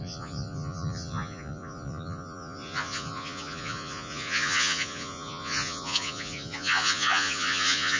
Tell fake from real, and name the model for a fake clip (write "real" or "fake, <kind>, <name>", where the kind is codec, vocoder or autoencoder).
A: fake, vocoder, Vocos